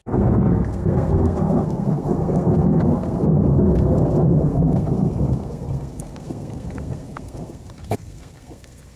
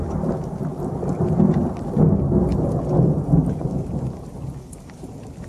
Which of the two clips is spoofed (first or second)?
first